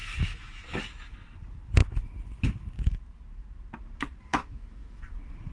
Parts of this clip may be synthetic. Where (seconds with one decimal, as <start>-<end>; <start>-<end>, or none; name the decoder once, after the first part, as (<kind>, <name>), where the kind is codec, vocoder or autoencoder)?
0.0-0.8 (autoencoder, DAC-VAE); 4.3-5.0